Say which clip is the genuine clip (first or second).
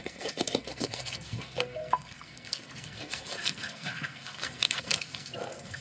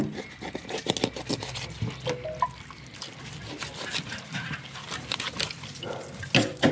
second